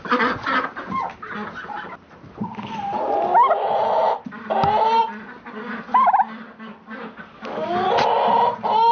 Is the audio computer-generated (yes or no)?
no